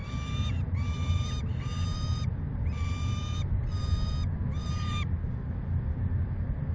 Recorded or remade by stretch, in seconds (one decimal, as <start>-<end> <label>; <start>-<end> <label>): 0.0-6.7 recorded